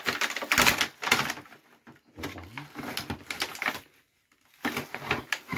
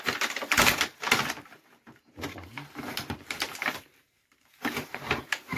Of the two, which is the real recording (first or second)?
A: first